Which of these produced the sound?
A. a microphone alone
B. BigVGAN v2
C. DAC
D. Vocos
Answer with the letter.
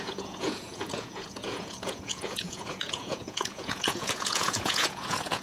D